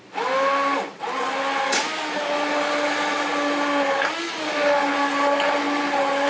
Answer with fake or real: real